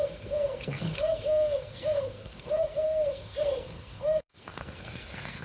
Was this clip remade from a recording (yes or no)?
yes